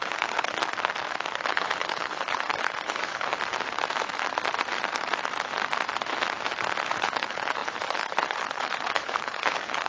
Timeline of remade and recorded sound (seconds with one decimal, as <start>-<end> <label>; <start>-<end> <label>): 0.0-0.6 remade; 0.6-1.5 recorded; 1.5-3.3 remade; 3.3-6.9 recorded; 6.9-9.9 remade